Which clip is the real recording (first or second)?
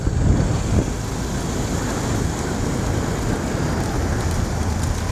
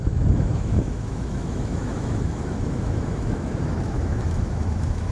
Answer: first